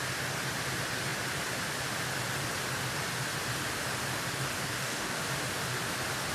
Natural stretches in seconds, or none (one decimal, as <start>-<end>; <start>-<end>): 0.0-4.6; 5.2-6.3